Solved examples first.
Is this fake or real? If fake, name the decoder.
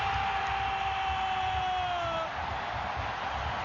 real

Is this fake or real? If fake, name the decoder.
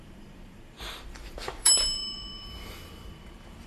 fake, vocoder, BigVGAN v2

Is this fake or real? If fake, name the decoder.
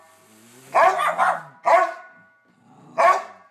real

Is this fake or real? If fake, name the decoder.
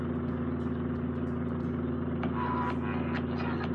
real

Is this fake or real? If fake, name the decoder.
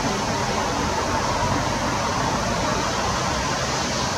real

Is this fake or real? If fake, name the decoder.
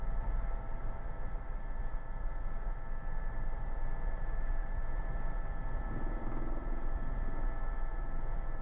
fake, vocoder, BigVGAN v2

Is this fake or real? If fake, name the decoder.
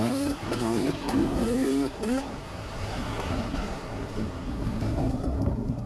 fake, codec, SNAC